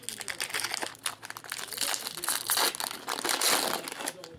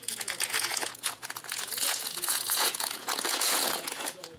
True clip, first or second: first